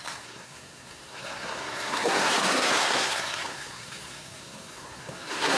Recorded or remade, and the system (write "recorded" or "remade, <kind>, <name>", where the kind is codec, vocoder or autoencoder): remade, codec, SNAC